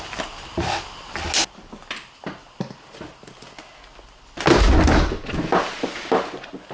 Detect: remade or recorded recorded